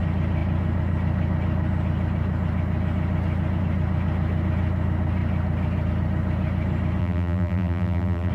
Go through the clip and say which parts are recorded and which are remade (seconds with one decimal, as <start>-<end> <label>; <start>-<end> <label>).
0.0-7.0 recorded; 7.0-8.3 remade